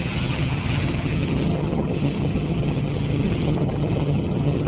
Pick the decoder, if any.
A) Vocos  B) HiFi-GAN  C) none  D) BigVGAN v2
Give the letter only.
B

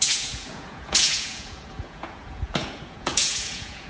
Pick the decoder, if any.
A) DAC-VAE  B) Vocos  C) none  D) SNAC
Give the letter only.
B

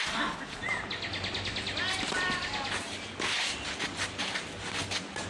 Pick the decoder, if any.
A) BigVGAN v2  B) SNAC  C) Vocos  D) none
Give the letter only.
D